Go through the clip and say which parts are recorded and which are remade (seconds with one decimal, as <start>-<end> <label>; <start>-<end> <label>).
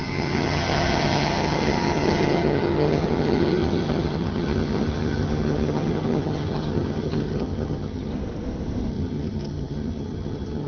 0.0-8.1 remade; 8.1-8.9 recorded; 8.9-10.7 remade